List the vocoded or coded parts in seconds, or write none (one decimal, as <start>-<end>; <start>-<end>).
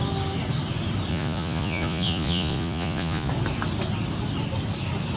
1.1-3.3